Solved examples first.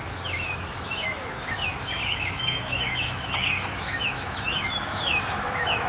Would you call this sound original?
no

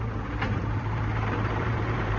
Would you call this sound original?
no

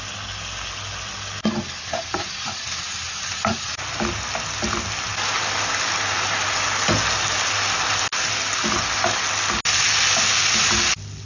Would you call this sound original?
yes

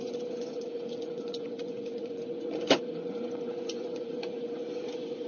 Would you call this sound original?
no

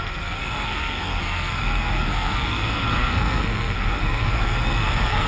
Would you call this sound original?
no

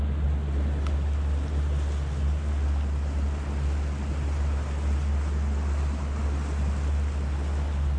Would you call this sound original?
yes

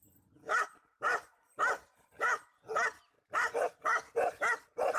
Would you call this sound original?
yes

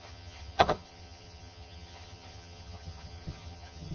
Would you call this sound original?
no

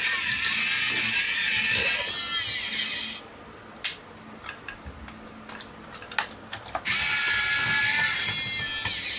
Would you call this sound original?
yes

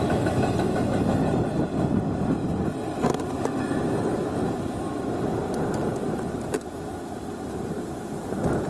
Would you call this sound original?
yes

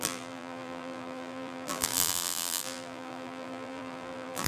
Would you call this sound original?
no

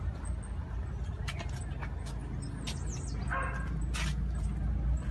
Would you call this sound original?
yes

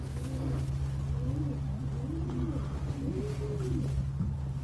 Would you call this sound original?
yes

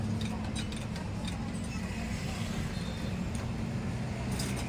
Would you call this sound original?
yes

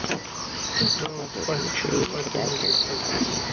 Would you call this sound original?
yes